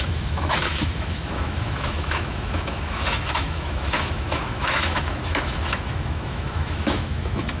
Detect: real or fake fake